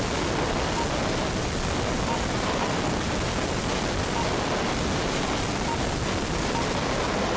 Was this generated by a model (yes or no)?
no